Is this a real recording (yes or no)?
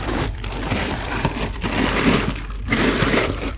no